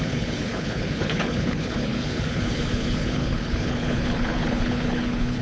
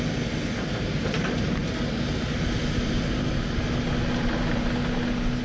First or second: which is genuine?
second